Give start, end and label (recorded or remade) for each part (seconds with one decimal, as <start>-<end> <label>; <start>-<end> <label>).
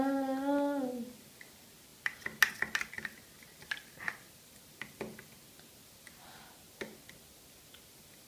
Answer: 0.0-8.3 recorded